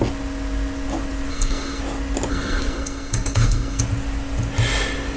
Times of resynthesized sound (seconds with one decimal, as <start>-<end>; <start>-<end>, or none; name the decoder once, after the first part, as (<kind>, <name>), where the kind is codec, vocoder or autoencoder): 1.3-1.8 (codec, SNAC); 2.3-3.8